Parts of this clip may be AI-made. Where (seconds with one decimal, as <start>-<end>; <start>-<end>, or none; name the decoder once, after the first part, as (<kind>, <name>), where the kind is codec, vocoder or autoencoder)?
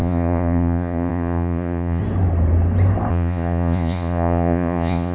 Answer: 0.0-2.0 (vocoder, Vocos); 3.1-5.1